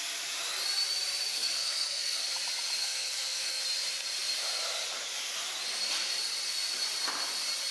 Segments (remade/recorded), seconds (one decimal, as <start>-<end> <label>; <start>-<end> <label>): 0.0-1.3 recorded; 1.3-2.2 remade; 2.2-2.8 recorded; 2.8-3.6 remade; 3.6-7.7 recorded